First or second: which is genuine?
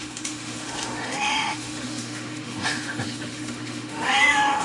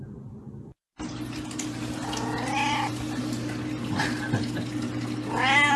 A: second